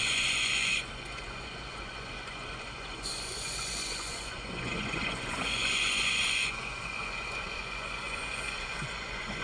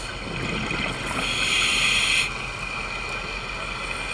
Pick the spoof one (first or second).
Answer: first